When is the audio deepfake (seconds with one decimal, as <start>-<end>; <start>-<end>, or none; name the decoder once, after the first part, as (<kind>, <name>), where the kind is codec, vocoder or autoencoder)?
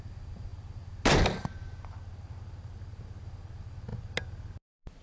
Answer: none